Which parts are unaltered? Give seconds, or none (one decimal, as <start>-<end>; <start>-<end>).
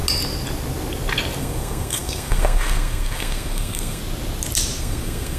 0.0-1.4; 4.0-4.8